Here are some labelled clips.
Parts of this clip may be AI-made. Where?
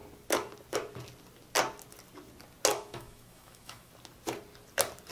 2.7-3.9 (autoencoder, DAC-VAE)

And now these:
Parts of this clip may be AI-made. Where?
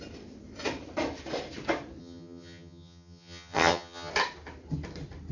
2.0-4.1 (vocoder, HiFi-GAN)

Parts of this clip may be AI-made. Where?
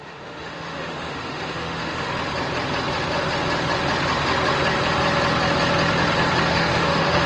0.0-2.1 (autoencoder, DAC-VAE); 6.5-7.3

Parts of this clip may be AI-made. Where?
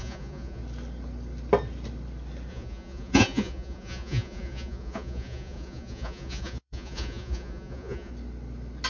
0.0-0.6 (vocoder, Vocos); 2.5-8.1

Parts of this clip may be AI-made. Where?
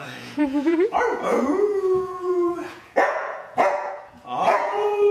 0.0-5.1 (vocoder, Vocos)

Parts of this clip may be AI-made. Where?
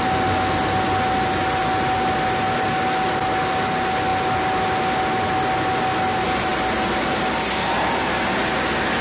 none